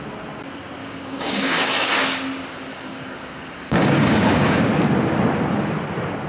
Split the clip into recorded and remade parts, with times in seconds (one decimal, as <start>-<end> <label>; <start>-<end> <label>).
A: 0.0-0.8 recorded; 0.8-1.9 remade; 1.9-2.7 recorded; 2.7-4.7 remade; 4.7-6.3 recorded